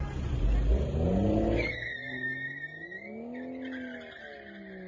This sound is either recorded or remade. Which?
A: recorded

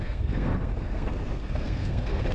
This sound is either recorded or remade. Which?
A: remade